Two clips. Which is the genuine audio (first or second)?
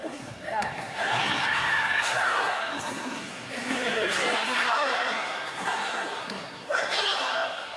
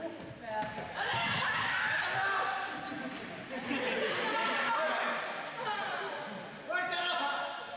second